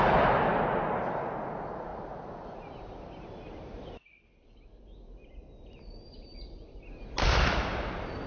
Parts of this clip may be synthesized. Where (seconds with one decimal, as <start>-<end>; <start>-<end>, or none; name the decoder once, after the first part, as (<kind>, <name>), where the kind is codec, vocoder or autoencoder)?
none